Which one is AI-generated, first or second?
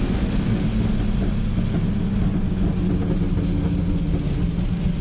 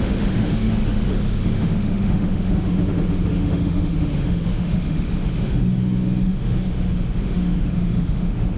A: second